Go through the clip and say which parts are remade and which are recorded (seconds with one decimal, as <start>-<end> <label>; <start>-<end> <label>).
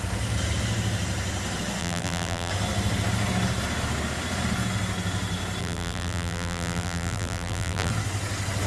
0.0-1.8 recorded; 1.8-2.5 remade; 2.5-5.6 recorded; 5.6-7.9 remade; 7.9-8.7 recorded